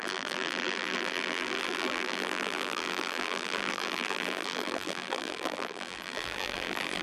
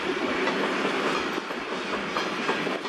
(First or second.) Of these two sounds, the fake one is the first